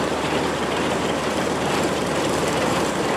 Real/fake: fake